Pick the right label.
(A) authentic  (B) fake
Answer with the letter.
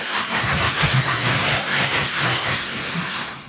B